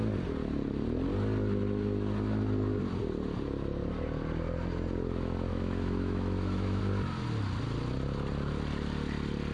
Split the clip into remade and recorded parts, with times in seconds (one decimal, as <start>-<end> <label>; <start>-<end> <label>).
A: 0.0-5.5 recorded; 5.5-6.8 remade; 6.8-9.5 recorded